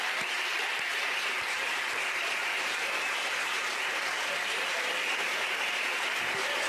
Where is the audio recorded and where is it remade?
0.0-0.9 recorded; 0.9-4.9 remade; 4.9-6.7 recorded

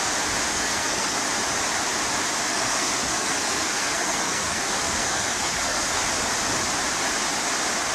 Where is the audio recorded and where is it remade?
0.0-0.5 recorded; 0.5-1.2 remade; 1.2-2.5 recorded; 2.5-6.0 remade; 6.0-7.9 recorded

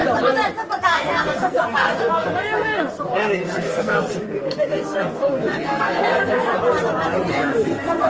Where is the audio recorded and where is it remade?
0.0-0.8 recorded; 0.8-6.5 remade; 6.5-7.3 recorded; 7.3-8.1 remade